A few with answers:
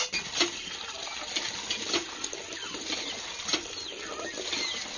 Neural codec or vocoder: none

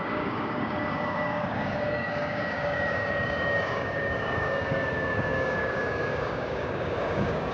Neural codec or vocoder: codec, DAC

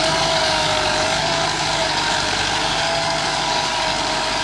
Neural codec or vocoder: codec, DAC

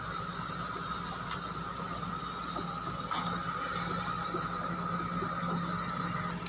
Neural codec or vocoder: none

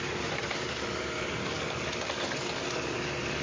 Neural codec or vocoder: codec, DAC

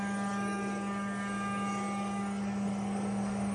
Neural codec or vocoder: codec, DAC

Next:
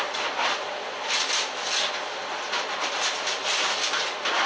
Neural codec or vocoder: none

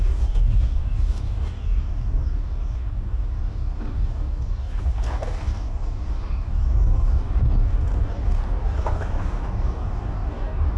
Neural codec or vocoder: codec, DAC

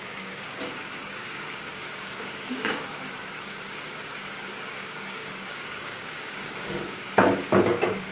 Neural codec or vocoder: codec, DAC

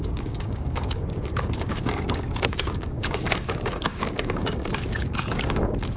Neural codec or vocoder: codec, DAC